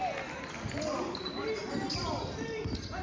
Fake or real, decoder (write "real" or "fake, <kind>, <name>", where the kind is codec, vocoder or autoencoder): real